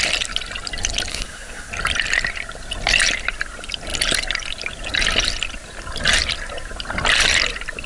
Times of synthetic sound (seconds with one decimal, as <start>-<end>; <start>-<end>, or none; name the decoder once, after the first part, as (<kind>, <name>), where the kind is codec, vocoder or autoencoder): 1.1-1.7 (codec, SNAC)